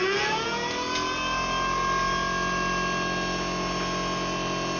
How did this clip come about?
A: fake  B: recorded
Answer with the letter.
B